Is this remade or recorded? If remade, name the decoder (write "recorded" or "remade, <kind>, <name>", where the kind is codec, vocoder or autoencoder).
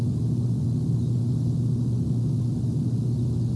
recorded